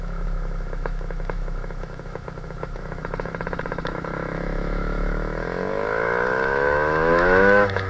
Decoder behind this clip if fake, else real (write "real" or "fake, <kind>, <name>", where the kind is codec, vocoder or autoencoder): fake, autoencoder, DAC-VAE